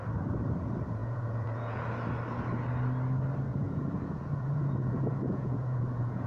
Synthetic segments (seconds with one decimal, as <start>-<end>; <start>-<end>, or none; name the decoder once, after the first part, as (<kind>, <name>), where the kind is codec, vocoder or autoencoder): 1.0-1.8 (vocoder, Vocos); 3.5-6.3